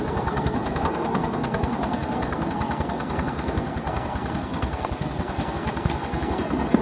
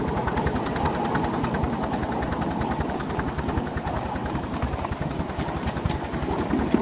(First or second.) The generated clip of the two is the first